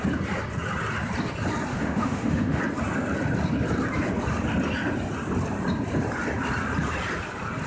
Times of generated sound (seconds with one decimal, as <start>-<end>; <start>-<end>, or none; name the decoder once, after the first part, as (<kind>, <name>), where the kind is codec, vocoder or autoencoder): 1.7-2.6 (autoencoder, DAC-VAE)